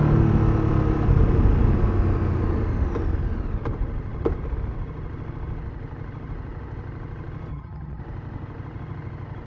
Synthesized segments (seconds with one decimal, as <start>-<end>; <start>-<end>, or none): 7.5-8.0